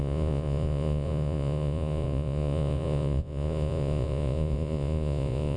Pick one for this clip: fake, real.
fake